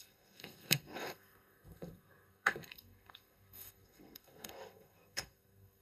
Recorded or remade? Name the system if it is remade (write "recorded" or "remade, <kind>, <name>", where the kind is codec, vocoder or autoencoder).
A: remade, codec, SNAC